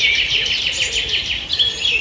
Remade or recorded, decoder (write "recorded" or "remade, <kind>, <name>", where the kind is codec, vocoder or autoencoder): recorded